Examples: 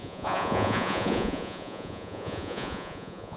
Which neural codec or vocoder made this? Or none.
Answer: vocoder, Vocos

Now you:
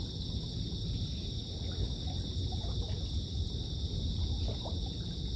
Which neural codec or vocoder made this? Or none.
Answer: none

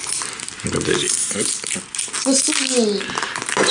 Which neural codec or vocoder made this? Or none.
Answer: none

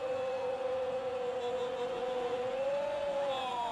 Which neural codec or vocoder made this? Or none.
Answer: vocoder, Vocos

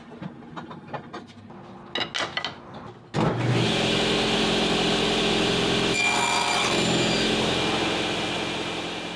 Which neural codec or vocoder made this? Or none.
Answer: none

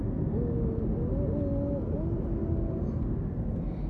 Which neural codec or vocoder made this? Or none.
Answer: none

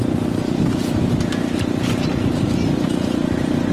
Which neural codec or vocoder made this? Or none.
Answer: none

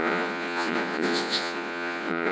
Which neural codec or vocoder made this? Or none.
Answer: vocoder, Vocos